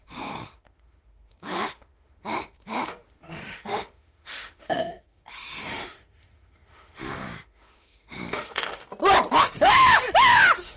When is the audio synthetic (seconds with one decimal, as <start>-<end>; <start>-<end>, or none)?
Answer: 0.0-8.8; 9.4-10.8